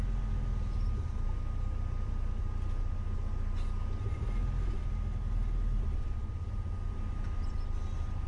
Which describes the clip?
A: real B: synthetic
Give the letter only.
A